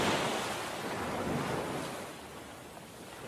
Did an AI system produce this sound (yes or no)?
no